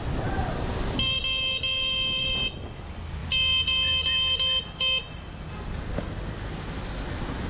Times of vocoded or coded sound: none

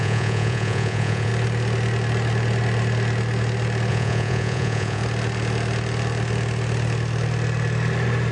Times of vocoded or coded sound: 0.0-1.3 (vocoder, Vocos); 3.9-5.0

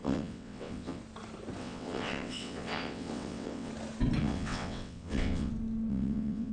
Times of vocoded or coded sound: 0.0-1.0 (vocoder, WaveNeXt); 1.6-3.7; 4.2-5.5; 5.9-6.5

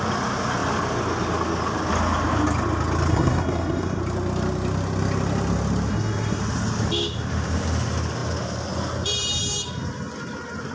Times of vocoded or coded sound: 3.1-4.0 (codec, SNAC); 5.9-6.4

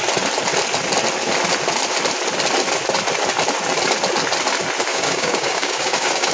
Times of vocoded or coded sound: 4.9-6.3 (codec, DAC)

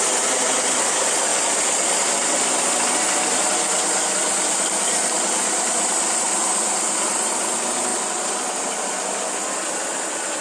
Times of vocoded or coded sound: none

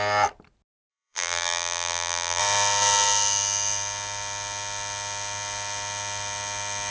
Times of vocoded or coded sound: 0.9-2.4 (vocoder, BigVGAN v2)